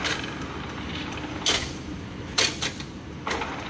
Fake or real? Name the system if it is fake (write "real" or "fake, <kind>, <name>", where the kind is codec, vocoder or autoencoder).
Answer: real